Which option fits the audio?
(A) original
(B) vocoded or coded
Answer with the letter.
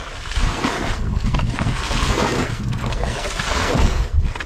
B